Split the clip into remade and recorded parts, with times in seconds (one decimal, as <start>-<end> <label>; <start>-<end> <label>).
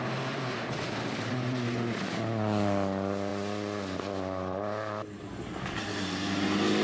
0.0-6.8 recorded